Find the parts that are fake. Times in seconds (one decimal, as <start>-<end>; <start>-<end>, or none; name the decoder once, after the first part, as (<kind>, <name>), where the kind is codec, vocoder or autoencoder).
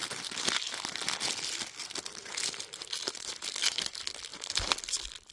none